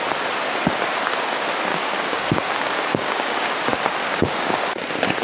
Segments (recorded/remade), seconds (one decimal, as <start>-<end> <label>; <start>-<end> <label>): 0.0-1.7 recorded; 1.7-3.5 remade; 3.5-4.0 recorded; 4.0-4.6 remade; 4.6-5.2 recorded